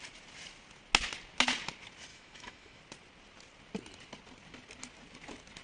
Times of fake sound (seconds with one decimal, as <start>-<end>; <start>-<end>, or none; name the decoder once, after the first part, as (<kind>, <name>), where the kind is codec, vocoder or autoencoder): 2.1-2.8 (autoencoder, DAC-VAE)

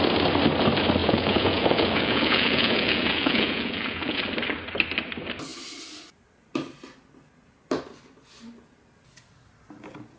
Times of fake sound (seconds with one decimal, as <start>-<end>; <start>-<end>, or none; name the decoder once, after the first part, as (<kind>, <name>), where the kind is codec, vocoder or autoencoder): 1.0-4.2 (vocoder, Vocos)

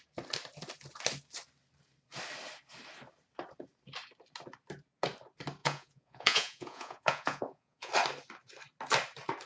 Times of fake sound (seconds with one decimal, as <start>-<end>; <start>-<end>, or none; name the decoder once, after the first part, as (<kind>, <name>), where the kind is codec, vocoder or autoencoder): 5.6-7.9 (vocoder, Vocos)

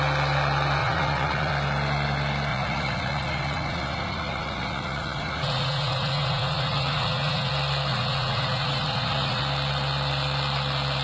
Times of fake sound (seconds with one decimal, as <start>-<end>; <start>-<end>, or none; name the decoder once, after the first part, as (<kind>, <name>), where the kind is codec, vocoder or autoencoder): 0.8-1.5 (vocoder, Vocos); 2.5-7.5; 7.9-9.4

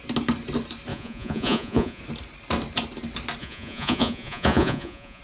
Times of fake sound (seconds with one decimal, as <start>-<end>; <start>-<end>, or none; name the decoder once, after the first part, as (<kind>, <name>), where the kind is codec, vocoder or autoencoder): 0.9-2.0 (vocoder, Vocos); 3.4-5.2

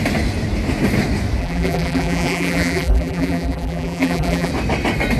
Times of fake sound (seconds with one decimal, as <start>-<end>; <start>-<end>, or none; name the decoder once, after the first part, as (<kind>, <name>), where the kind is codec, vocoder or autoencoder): 1.4-4.5 (vocoder, BigVGAN v2)